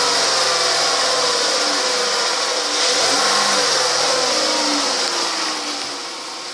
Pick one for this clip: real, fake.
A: real